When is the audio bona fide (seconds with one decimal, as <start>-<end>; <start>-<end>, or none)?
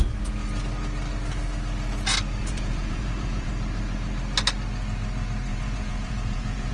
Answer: 0.0-2.4; 3.5-5.5